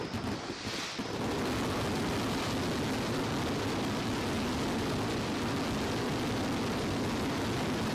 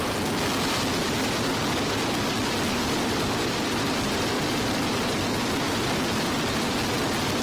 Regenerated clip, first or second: second